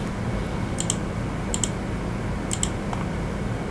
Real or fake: real